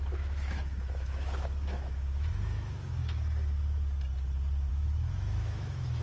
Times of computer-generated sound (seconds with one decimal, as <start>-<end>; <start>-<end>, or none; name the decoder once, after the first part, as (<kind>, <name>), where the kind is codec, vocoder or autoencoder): 0.0-3.0 (autoencoder, DAC-VAE); 4.7-6.0

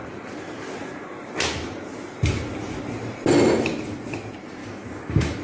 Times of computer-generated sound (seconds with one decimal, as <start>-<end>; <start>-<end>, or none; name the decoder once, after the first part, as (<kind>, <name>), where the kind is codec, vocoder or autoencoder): 4.6-5.4 (autoencoder, DAC-VAE)

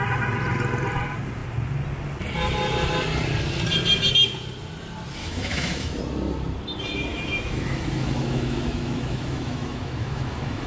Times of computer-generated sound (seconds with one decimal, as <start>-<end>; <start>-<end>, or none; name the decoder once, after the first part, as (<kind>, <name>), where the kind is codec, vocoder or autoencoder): 5.2-6.0 (autoencoder, DAC-VAE); 7.1-10.7

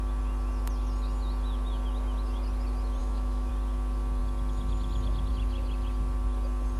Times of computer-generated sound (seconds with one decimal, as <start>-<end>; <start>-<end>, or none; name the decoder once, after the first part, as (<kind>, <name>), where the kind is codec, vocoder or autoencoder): 3.0-3.5 (autoencoder, DAC-VAE)

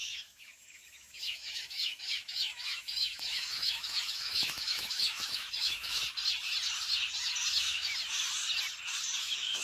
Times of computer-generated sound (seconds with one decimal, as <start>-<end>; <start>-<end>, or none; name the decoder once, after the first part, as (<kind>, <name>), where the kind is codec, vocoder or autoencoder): 0.0-6.0 (autoencoder, DAC-VAE); 7.5-7.9; 9.2-9.6

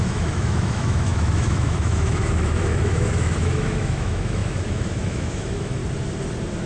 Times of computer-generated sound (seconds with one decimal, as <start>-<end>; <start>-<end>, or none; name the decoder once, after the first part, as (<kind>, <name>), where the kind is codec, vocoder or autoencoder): 0.0-5.8 (autoencoder, DAC-VAE)

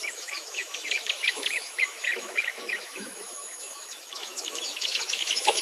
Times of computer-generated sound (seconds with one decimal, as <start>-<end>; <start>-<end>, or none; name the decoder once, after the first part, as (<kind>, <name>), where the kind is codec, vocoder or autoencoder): 0.0-5.6 (autoencoder, DAC-VAE)

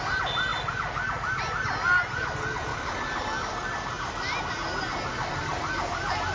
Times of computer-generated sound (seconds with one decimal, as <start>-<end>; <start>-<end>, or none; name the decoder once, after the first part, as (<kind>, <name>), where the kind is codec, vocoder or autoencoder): none